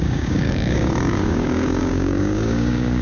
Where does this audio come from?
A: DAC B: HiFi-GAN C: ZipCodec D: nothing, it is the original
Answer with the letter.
A